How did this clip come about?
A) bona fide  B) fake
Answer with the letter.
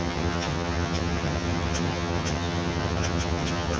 B